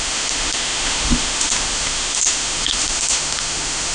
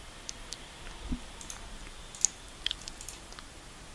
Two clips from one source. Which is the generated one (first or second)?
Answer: first